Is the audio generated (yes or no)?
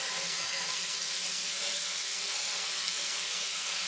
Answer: yes